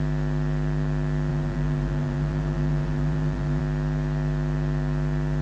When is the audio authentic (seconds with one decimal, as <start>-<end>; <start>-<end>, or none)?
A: 0.0-1.3; 3.6-5.4